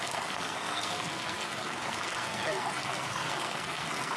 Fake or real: fake